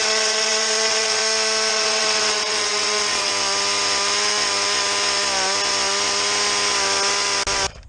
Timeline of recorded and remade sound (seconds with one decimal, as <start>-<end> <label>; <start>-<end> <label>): 0.0-1.2 remade; 1.2-1.7 recorded; 1.7-3.3 remade; 3.3-7.9 recorded